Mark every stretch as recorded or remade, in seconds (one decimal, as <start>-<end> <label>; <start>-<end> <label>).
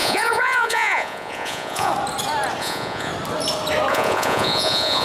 0.0-1.9 remade; 1.9-2.6 recorded; 2.6-3.1 remade; 3.1-3.9 recorded; 3.9-5.0 remade